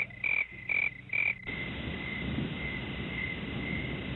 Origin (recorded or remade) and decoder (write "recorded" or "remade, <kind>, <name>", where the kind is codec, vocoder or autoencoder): recorded